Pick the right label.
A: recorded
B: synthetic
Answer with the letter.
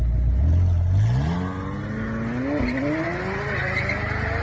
A